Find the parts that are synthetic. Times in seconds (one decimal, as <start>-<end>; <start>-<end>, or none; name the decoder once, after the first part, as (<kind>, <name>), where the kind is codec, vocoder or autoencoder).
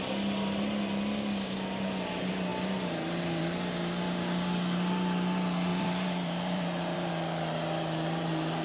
5.7-7.1 (vocoder, BigVGAN v2)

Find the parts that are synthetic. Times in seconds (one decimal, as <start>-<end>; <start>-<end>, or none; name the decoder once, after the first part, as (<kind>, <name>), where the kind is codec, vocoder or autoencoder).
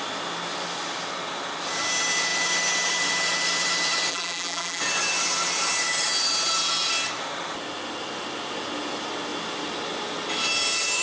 4.1-4.8 (vocoder, BigVGAN v2)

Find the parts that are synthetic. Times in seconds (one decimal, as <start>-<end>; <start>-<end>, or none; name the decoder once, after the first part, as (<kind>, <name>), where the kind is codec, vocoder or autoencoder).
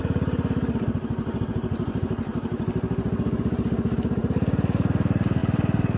0.0-2.5 (vocoder, BigVGAN v2); 3.4-4.2; 4.9-5.4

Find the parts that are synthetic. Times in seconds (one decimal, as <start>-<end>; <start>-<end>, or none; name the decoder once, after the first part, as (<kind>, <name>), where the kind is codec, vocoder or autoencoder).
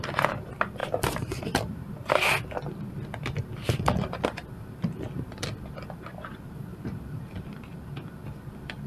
0.8-2.1 (vocoder, BigVGAN v2); 6.7-7.2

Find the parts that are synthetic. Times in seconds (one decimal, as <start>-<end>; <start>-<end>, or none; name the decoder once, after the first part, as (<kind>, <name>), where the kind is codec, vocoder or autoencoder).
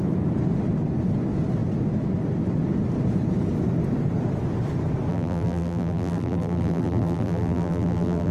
5.1-8.3 (vocoder, BigVGAN v2)